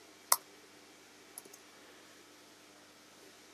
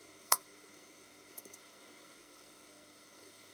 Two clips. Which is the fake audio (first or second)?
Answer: second